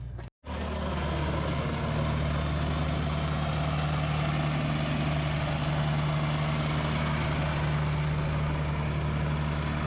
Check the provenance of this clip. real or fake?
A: real